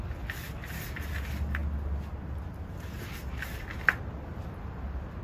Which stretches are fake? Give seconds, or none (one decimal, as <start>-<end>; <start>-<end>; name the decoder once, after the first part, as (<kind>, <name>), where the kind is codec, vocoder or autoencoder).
none

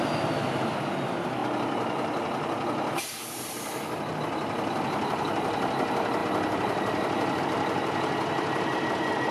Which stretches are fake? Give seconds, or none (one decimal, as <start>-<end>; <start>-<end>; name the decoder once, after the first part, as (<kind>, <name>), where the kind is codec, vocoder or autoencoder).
6.2-7.4 (vocoder, BigVGAN v2)

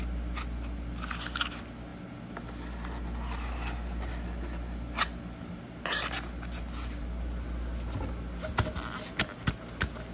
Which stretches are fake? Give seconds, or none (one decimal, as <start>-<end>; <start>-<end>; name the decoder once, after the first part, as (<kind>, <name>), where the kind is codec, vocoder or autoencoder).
none

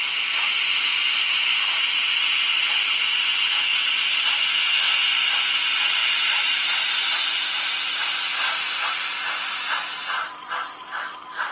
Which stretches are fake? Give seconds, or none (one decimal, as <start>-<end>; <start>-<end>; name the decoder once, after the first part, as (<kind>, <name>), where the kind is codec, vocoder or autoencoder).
0.9-1.5 (vocoder, BigVGAN v2); 6.0-6.6

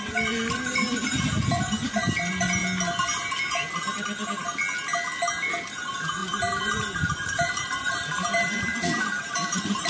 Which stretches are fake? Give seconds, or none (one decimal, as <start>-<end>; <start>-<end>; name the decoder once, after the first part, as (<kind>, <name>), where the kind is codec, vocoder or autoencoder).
0.0-2.6 (vocoder, BigVGAN v2); 5.6-9.9

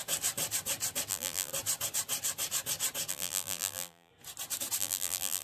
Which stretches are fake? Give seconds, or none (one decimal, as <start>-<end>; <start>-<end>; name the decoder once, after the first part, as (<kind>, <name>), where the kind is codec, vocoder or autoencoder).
1.1-1.5 (vocoder, BigVGAN v2); 3.1-4.1; 4.8-5.4

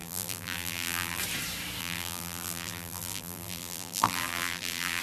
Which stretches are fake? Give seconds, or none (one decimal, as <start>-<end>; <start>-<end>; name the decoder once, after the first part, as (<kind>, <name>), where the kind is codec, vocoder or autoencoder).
0.0-1.2 (vocoder, BigVGAN v2); 1.8-5.0

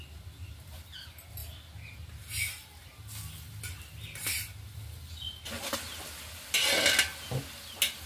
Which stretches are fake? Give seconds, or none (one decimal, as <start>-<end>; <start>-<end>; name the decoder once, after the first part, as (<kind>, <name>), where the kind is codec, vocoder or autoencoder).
none